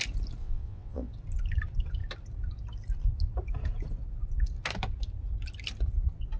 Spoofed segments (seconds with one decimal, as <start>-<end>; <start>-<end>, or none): 0.4-1.1